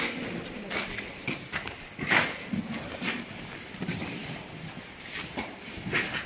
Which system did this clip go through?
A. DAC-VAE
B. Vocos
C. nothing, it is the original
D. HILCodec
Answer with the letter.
C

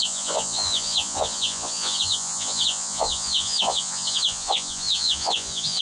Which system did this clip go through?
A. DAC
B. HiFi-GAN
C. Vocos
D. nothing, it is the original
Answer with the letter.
C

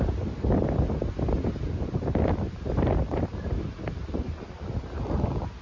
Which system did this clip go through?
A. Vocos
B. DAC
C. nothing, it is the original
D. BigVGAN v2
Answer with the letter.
C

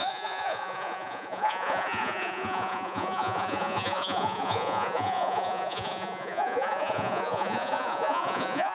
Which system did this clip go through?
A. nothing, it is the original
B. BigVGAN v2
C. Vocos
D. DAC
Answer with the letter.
C